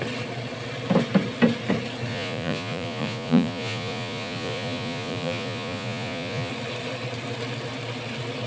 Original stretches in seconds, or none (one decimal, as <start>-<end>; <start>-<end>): 0.0-2.1; 6.5-8.5